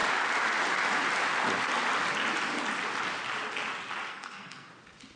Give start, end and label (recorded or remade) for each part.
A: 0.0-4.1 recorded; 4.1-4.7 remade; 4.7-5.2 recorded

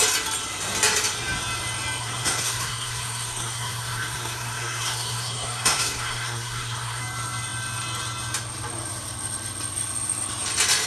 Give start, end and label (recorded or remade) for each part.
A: 0.0-2.0 recorded; 2.0-7.0 remade; 7.0-10.9 recorded

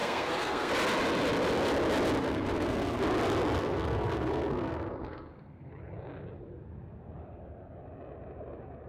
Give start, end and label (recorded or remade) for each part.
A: 0.0-0.7 remade; 0.7-2.2 recorded; 2.2-3.0 remade; 3.0-3.6 recorded; 3.6-5.7 remade; 5.7-8.9 recorded

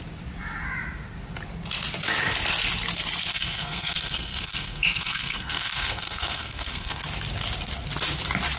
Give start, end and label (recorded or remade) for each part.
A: 0.0-3.3 recorded; 3.3-7.0 remade; 7.0-8.6 recorded

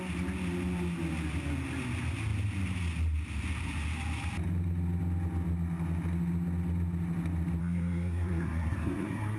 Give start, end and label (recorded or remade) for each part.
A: 0.0-7.6 recorded; 7.6-9.4 remade

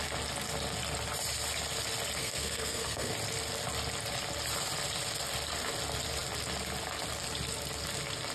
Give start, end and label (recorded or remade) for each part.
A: 0.0-2.2 recorded; 2.2-3.1 remade; 3.1-8.3 recorded

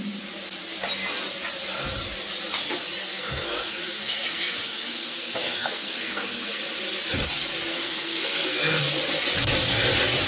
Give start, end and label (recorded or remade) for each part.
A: 0.0-3.0 recorded; 3.0-6.6 remade; 6.6-7.7 recorded; 7.7-8.8 remade; 8.8-10.3 recorded

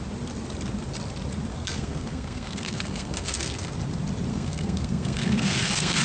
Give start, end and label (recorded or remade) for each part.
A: 0.0-1.5 recorded; 1.5-3.8 remade; 3.8-4.3 recorded; 4.3-6.0 remade